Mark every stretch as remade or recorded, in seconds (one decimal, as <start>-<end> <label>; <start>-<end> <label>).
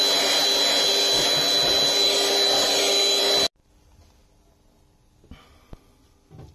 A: 0.0-6.5 recorded